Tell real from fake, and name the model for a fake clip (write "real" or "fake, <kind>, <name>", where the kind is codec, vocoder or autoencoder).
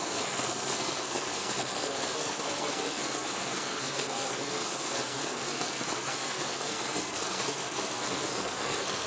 fake, codec, SNAC